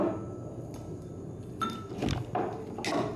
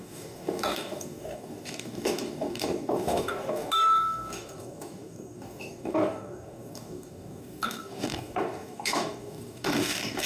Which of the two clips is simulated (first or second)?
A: second